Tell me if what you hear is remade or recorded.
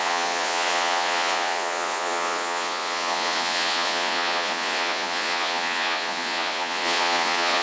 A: remade